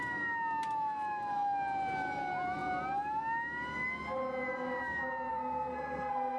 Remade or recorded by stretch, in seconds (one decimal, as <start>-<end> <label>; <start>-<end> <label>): 0.0-5.3 recorded; 5.3-6.4 remade

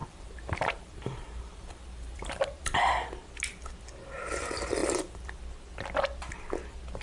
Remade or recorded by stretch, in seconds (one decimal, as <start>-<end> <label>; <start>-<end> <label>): 0.0-2.9 remade; 2.9-4.8 recorded; 4.8-5.4 remade; 5.4-7.0 recorded

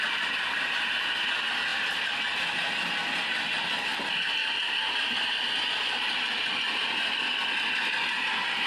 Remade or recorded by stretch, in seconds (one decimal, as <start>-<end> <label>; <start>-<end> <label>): 0.0-8.7 recorded

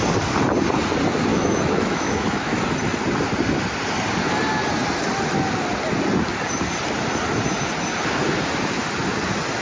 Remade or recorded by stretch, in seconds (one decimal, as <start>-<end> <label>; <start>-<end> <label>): 0.0-1.3 recorded; 1.3-2.6 remade; 2.6-9.6 recorded

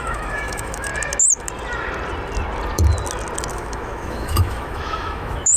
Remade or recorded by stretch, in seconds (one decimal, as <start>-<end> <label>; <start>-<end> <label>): 0.0-0.9 remade; 0.9-3.5 recorded; 3.5-5.6 remade

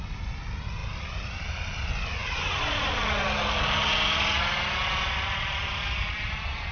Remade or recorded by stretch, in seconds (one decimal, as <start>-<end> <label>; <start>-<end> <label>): 0.0-0.8 recorded; 0.8-1.3 remade; 1.3-6.7 recorded

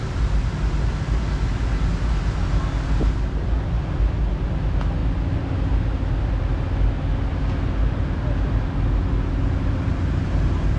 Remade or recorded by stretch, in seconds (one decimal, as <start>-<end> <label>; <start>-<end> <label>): 0.0-10.8 recorded